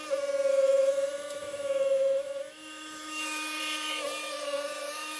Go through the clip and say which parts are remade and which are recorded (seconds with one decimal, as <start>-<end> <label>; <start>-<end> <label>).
0.0-0.5 recorded; 0.5-3.6 remade; 3.6-4.2 recorded; 4.2-5.2 remade